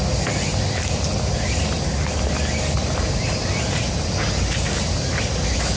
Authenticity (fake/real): real